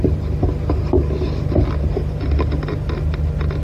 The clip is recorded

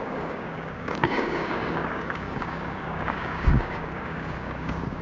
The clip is remade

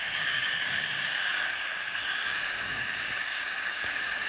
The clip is remade